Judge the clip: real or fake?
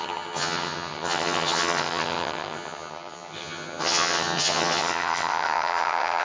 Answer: fake